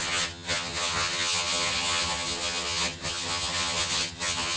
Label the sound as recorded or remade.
remade